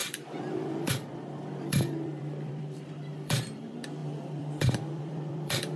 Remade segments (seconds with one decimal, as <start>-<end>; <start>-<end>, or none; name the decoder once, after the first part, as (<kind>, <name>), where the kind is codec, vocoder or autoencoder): 0.0-5.8 (vocoder, BigVGAN v2)